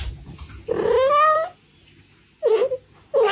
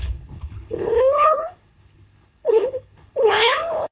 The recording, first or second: first